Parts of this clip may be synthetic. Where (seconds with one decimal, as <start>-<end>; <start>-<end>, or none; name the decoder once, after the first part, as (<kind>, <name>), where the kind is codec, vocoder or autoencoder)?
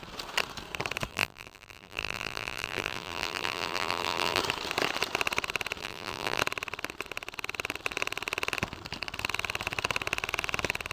1.1-4.4 (vocoder, BigVGAN v2); 5.8-6.4